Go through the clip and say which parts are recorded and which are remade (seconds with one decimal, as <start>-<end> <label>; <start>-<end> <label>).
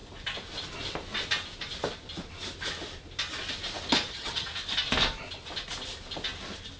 0.0-4.1 recorded; 4.1-4.5 remade; 4.5-6.8 recorded